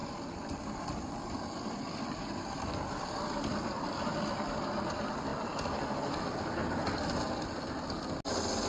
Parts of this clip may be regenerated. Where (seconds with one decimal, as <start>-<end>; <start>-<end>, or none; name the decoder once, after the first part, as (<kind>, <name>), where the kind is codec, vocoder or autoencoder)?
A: 0.0-4.6 (vocoder, BigVGAN v2)